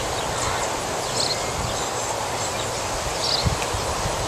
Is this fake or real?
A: real